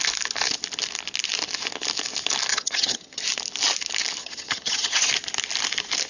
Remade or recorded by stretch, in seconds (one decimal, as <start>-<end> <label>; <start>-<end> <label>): 0.0-2.5 recorded; 2.5-3.2 remade; 3.2-4.2 recorded; 4.2-5.1 remade; 5.1-6.1 recorded